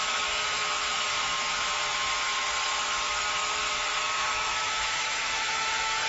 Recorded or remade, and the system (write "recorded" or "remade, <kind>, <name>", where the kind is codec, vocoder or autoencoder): remade, autoencoder, DAC-VAE